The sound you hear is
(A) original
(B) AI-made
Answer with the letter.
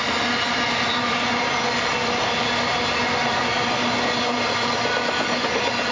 A